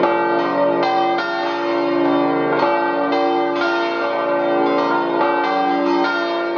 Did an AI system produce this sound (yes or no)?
no